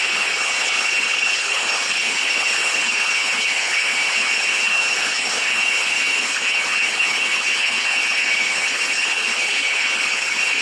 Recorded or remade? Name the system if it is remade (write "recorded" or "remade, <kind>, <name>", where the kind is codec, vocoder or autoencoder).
remade, codec, HILCodec